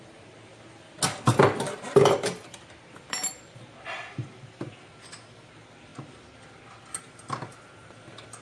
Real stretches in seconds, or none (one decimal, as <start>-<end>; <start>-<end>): 0.5-1.4; 5.9-7.0